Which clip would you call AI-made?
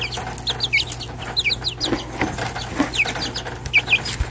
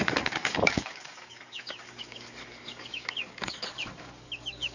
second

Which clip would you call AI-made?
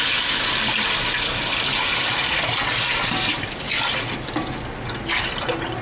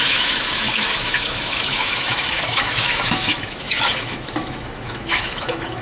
second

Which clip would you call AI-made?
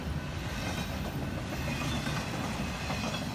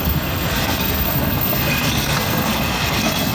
second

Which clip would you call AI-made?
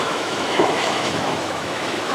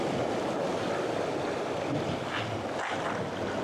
first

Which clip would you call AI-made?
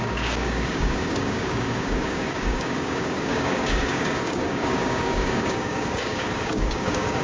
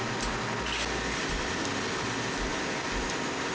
first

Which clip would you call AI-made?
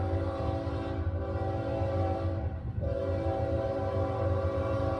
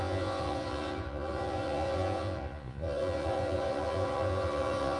second